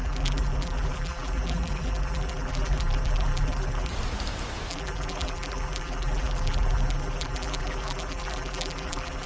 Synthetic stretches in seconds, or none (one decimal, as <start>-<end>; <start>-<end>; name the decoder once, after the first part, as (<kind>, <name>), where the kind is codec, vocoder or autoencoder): 0.0-3.9 (vocoder, BigVGAN v2); 4.7-9.3